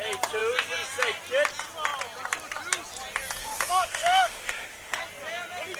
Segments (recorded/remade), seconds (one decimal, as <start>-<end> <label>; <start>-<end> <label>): 0.0-3.4 recorded; 3.4-5.0 remade; 5.0-5.8 recorded